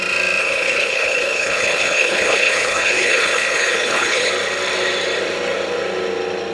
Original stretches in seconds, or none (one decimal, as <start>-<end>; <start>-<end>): 0.0-0.4; 4.3-6.5